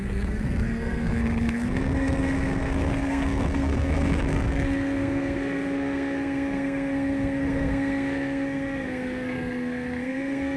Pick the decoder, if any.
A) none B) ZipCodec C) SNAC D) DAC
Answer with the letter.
C